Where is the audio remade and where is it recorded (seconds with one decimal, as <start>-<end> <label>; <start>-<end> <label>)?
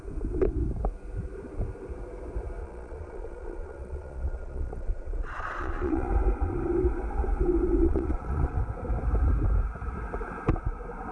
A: 0.0-2.6 recorded; 2.6-6.1 remade; 6.1-7.8 recorded; 7.8-8.6 remade; 8.6-11.1 recorded